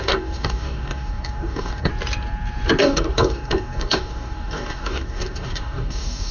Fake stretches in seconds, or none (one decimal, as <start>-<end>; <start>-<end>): 0.0-1.9; 2.8-6.3